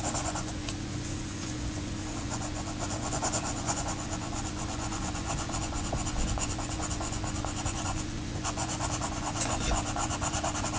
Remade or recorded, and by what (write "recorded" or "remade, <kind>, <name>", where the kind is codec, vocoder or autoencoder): remade, vocoder, Vocos